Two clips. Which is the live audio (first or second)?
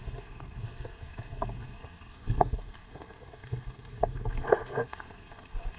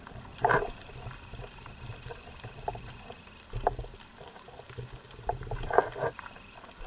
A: second